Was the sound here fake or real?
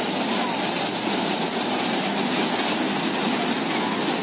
real